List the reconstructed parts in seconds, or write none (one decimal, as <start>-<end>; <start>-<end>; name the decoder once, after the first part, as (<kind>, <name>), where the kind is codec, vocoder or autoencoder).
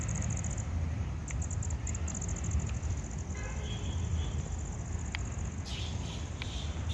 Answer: 5.7-6.9 (vocoder, BigVGAN v2)